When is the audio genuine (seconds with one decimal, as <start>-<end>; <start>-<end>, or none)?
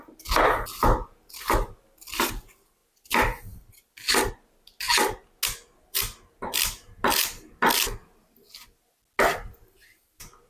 0.0-10.5